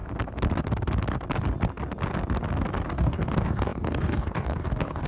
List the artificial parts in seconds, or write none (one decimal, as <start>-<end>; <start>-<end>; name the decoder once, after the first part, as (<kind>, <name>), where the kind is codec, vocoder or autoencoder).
2.9-5.1 (codec, DAC)